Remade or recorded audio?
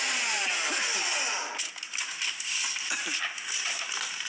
recorded